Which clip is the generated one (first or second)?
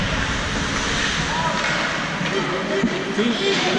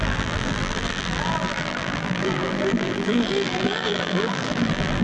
second